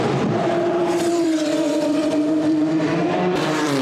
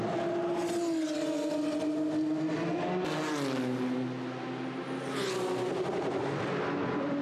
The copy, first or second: first